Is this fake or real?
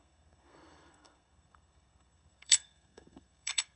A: fake